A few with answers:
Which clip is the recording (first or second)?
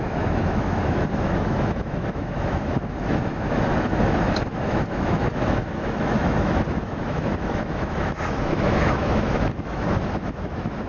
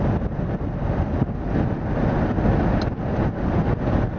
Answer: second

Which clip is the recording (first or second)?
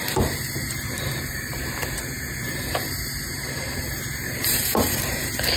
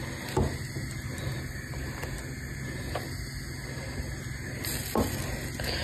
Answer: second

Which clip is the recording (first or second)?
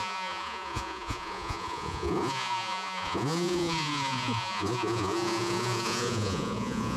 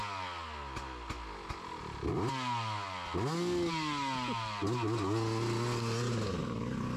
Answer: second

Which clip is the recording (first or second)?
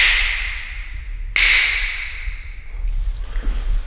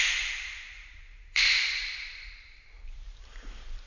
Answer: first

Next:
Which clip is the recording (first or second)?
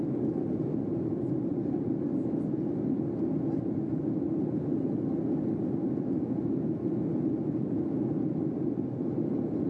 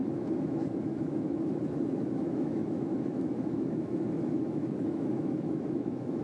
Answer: first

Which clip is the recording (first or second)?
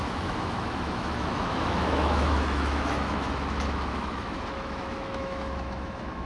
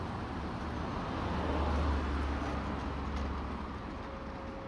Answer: second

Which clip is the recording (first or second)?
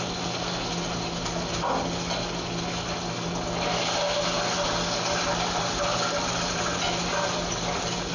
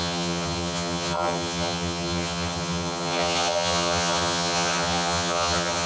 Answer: first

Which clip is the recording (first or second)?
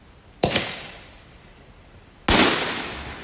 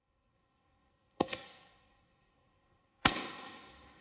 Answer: first